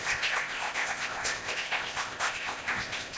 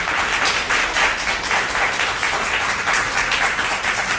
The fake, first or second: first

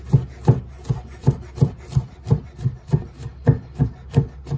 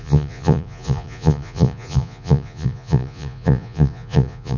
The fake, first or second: second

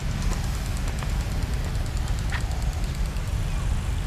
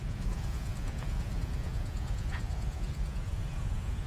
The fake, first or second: second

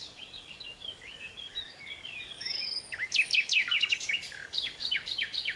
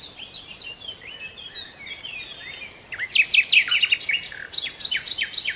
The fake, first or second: first